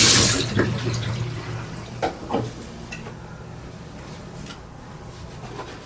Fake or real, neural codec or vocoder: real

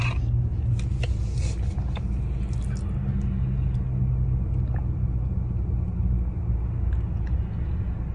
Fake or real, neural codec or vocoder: real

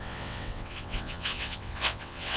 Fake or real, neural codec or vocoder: fake, vocoder, WaveNeXt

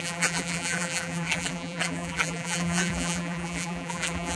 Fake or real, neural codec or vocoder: fake, vocoder, BigVGAN v2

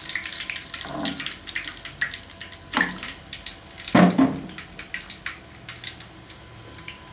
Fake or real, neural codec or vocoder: real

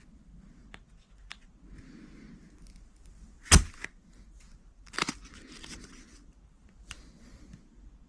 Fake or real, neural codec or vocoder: real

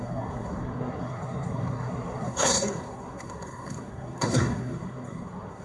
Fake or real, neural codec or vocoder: fake, codec, SNAC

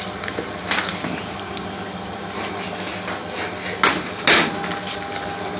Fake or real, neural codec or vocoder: real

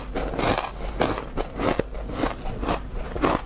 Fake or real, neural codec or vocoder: real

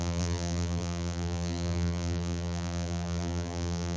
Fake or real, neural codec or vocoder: fake, vocoder, BigVGAN v2